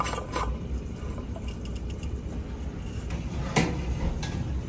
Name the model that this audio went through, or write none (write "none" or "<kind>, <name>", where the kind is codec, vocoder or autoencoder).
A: none